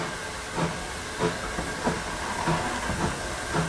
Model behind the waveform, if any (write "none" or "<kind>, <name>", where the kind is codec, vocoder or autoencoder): none